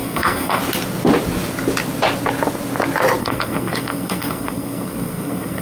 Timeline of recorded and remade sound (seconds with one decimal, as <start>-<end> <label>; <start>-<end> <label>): 0.0-0.6 remade; 0.6-3.2 recorded; 3.2-5.6 remade